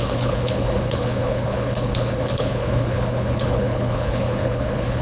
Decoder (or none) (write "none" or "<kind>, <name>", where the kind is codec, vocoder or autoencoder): codec, HILCodec